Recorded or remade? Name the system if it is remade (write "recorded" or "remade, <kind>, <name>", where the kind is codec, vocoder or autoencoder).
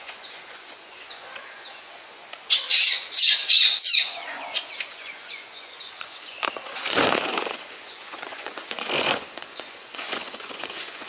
remade, vocoder, Vocos